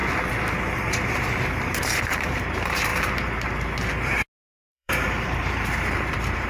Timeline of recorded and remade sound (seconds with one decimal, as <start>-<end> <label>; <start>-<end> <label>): 0.0-1.5 recorded; 1.5-2.9 remade; 2.9-4.4 recorded; 4.4-6.5 remade